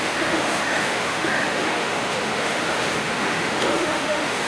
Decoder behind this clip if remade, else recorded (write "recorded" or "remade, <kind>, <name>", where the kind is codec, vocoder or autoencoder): remade, autoencoder, DAC-VAE